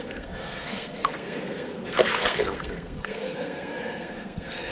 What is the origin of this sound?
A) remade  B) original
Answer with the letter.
A